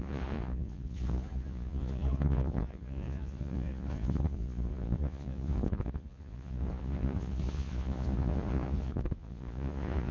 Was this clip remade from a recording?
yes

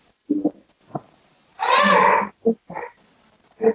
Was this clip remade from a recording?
no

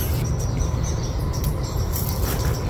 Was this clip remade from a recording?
no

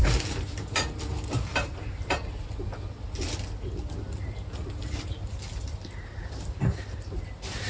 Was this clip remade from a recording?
no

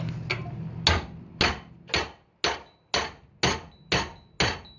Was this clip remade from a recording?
no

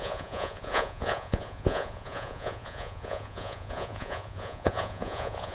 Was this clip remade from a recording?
yes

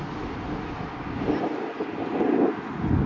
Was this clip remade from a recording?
no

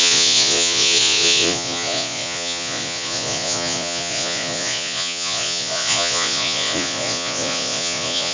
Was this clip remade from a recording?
yes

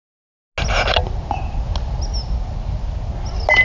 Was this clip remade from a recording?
no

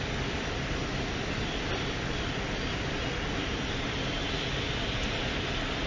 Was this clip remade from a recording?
no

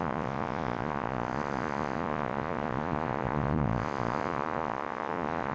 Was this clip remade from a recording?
yes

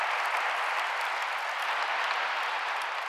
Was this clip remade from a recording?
no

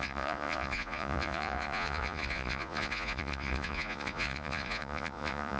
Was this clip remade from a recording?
yes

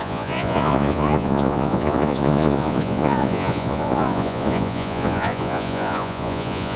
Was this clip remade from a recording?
yes